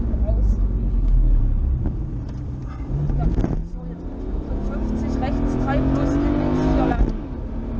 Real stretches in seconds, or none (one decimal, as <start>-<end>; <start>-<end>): 0.0-0.8; 1.4-7.8